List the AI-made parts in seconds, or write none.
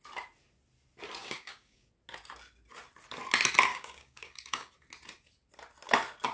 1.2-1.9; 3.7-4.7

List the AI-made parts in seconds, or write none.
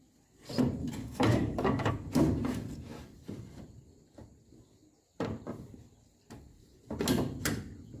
0.8-1.9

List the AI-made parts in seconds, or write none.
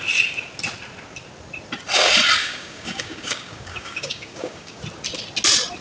2.4-4.8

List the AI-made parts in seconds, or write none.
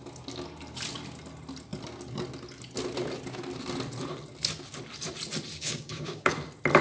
5.5-6.3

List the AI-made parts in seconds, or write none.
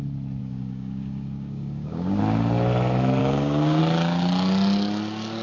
0.4-2.2; 3.2-3.8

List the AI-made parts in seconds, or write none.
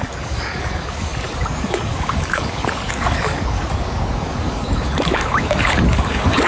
0.0-6.5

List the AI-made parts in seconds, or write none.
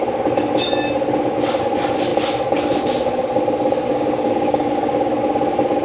3.9-5.1